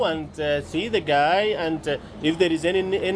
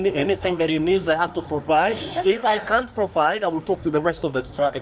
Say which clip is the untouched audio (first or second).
first